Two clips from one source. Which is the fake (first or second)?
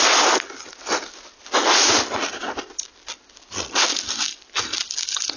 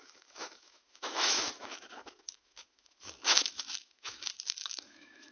second